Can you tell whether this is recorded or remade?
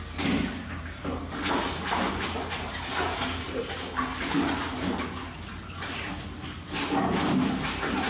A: recorded